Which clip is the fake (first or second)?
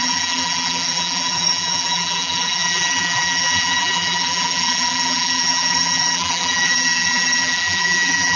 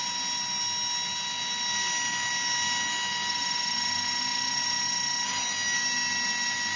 first